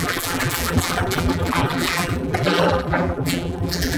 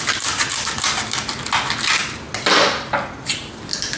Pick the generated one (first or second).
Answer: first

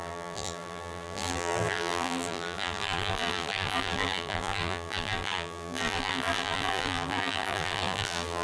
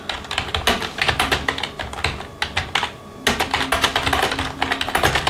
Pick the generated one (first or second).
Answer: first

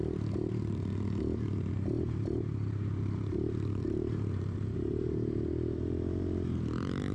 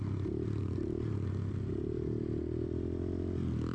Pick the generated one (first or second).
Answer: first